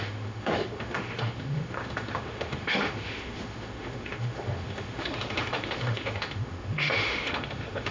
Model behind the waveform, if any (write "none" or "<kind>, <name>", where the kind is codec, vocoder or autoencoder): autoencoder, DAC-VAE